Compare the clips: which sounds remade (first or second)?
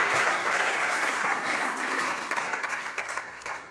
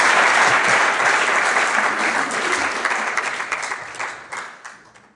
first